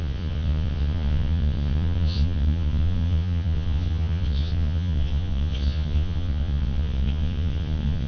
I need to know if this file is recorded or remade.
remade